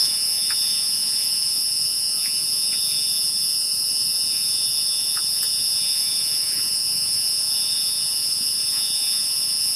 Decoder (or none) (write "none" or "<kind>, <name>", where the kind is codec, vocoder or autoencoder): vocoder, Vocos